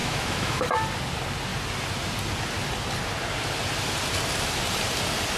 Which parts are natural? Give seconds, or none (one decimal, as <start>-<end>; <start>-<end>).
0.6-5.4